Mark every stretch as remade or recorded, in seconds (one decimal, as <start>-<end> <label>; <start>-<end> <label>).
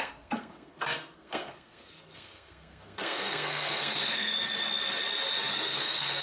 0.0-4.3 remade; 4.3-5.5 recorded; 5.5-6.2 remade